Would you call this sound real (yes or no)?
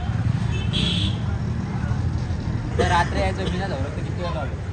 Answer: yes